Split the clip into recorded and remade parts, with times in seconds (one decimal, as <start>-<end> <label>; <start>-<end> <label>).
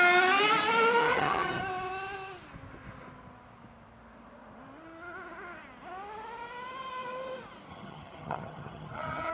0.0-1.0 recorded; 1.0-1.6 remade; 1.6-7.7 recorded; 7.7-9.3 remade